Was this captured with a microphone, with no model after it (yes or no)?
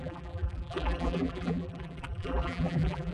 no